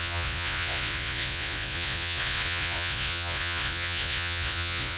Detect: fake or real fake